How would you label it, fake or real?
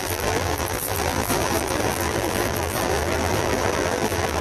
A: fake